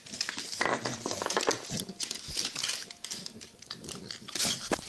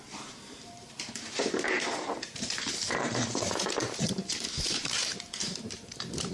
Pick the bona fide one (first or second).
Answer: first